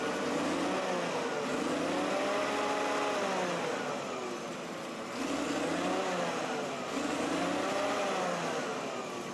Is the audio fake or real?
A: real